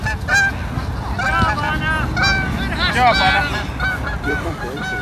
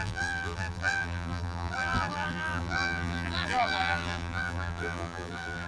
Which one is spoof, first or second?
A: second